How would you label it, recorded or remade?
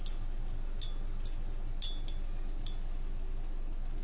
recorded